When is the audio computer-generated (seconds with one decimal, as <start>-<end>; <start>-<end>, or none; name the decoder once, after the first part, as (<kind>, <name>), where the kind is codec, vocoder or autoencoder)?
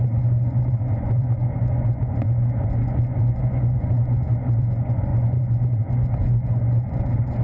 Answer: 0.0-7.4 (vocoder, Vocos)